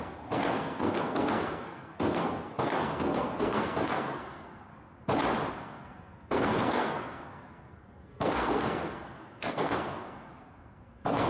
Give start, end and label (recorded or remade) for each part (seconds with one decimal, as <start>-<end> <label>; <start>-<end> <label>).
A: 0.0-4.7 remade; 4.7-5.5 recorded; 5.5-11.3 remade